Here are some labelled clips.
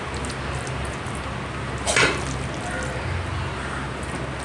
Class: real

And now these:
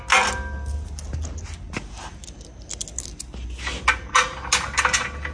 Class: real